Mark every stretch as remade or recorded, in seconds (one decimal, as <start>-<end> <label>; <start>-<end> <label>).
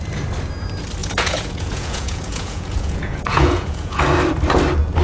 0.0-1.0 recorded; 1.0-4.0 remade; 4.0-5.0 recorded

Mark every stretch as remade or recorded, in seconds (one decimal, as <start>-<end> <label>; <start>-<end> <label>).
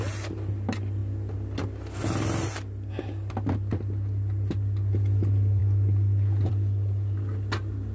0.0-7.9 recorded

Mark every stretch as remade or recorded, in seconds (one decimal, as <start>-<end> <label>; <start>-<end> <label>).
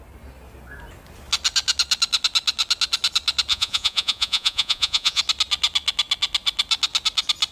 0.0-3.5 recorded; 3.5-5.2 remade; 5.2-7.5 recorded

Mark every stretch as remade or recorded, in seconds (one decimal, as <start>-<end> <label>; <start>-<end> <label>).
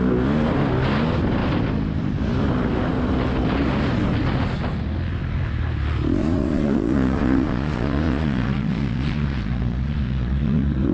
0.0-6.2 recorded; 6.2-10.9 remade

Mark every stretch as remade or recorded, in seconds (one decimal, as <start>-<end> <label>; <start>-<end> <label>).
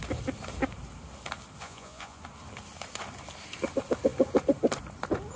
0.0-1.6 recorded; 1.6-2.2 remade; 2.2-5.4 recorded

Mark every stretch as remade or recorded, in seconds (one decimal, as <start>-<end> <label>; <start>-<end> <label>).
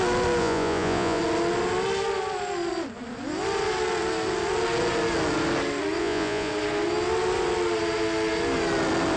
0.0-0.4 recorded; 0.4-1.2 remade; 1.2-6.0 recorded; 6.0-6.5 remade; 6.5-9.2 recorded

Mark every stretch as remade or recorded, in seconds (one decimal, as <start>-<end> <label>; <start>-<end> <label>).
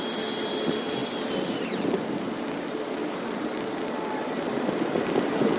0.0-5.6 recorded